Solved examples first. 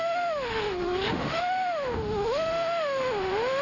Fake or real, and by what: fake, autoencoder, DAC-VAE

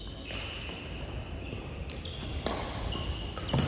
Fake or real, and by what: real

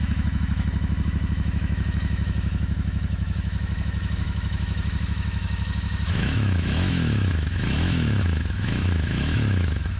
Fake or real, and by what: fake, autoencoder, DAC-VAE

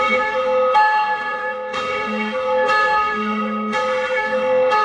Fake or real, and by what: fake, autoencoder, DAC-VAE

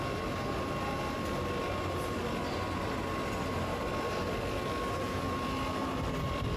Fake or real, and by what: real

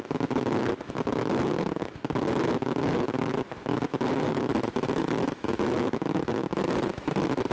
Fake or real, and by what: fake, autoencoder, DAC-VAE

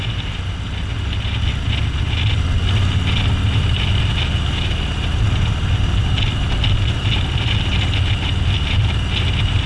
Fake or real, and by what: real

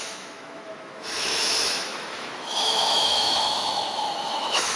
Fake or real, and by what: fake, autoencoder, DAC-VAE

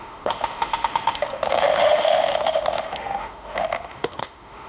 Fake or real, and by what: fake, autoencoder, DAC-VAE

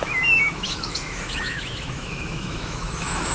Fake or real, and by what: fake, autoencoder, DAC-VAE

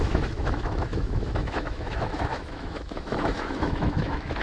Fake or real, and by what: fake, autoencoder, DAC-VAE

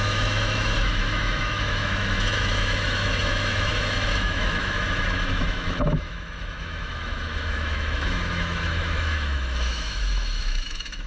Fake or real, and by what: fake, autoencoder, DAC-VAE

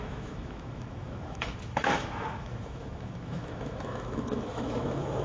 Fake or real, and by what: fake, autoencoder, DAC-VAE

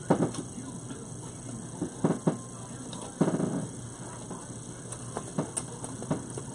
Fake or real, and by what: real